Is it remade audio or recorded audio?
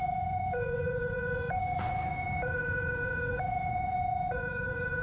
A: remade